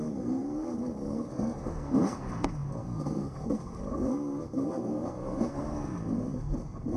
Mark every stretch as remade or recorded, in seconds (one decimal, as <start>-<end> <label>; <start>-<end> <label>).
0.0-7.0 remade